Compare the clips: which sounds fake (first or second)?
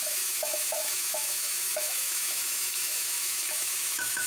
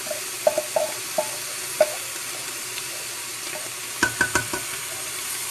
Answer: first